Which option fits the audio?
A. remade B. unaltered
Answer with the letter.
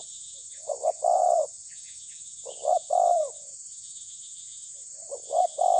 A